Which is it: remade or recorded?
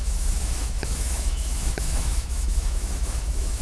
remade